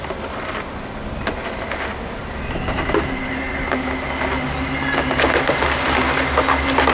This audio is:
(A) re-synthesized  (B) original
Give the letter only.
B